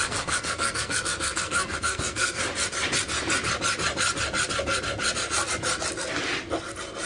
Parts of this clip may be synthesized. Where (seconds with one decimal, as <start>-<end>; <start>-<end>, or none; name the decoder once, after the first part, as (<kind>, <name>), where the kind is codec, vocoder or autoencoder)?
0.0-2.4 (codec, SNAC)